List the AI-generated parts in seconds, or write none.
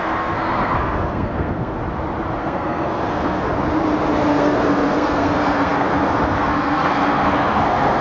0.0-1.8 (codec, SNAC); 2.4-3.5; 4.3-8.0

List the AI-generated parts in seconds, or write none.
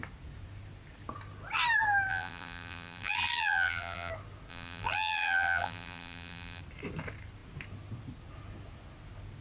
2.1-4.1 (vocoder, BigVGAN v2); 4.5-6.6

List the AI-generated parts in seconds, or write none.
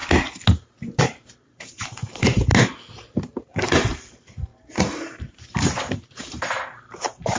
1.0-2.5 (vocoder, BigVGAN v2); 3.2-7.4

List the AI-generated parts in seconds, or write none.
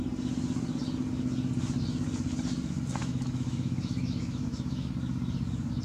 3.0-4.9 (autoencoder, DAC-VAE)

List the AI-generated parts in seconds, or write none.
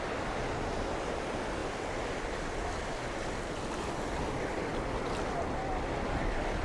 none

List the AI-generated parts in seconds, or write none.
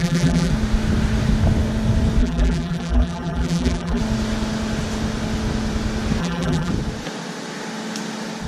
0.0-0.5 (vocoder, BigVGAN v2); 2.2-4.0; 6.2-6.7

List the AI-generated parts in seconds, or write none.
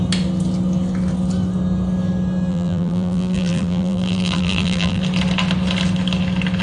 2.5-5.0 (vocoder, BigVGAN v2)